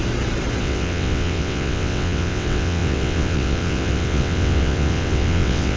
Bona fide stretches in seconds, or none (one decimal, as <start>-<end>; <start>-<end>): 0.0-0.6